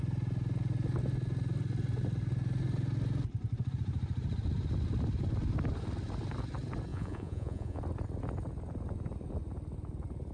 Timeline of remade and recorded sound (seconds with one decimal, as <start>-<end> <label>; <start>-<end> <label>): 0.0-6.9 recorded; 6.9-7.8 remade; 7.8-10.3 recorded